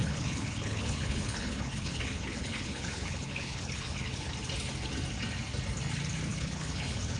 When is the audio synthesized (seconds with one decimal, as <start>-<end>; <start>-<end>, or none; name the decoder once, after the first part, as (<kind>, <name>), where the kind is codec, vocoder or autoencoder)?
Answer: 0.0-4.3 (codec, HILCodec); 6.3-7.2